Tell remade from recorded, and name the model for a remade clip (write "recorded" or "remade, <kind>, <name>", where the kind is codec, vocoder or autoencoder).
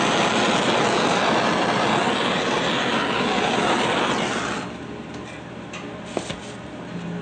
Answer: recorded